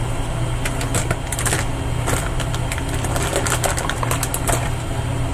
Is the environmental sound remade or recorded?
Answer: recorded